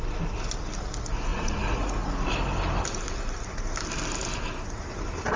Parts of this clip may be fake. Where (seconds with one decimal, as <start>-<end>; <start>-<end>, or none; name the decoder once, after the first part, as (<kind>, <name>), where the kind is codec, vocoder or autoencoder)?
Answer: 1.3-2.1 (vocoder, Vocos)